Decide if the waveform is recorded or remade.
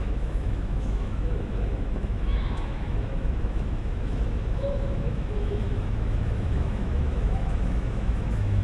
remade